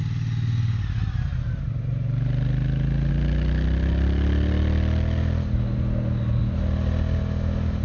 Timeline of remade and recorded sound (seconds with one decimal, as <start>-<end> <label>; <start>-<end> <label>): 0.0-7.8 recorded